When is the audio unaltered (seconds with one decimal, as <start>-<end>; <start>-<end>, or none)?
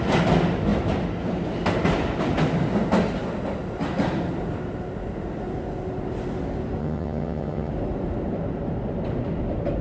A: 0.0-6.8; 7.7-9.8